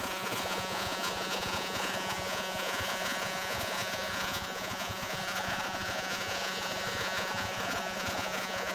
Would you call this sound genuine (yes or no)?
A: no